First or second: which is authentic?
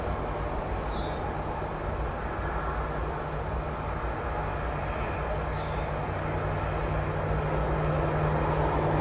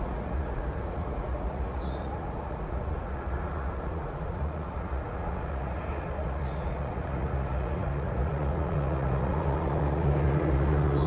first